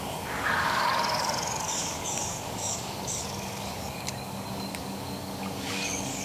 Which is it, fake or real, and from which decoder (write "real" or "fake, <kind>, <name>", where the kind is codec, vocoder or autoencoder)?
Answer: fake, codec, DAC